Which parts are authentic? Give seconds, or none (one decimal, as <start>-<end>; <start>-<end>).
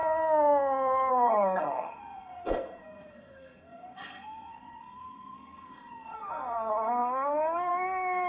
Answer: 0.0-1.1